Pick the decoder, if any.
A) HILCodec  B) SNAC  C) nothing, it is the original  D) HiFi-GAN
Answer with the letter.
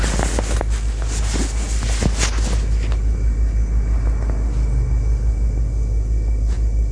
C